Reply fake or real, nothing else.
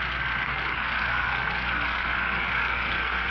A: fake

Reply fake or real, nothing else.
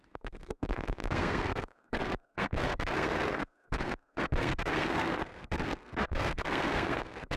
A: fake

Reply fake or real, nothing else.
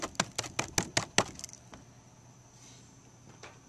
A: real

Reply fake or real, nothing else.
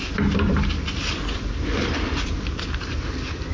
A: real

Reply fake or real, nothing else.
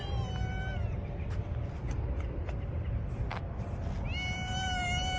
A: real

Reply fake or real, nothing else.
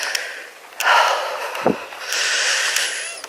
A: fake